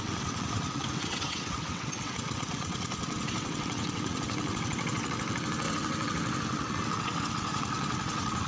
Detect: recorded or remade remade